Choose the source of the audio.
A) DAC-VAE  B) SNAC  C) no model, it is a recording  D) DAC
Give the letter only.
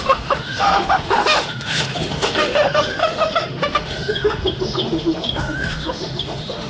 A